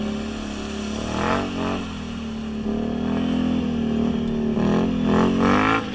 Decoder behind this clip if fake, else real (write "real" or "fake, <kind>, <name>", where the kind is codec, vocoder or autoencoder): real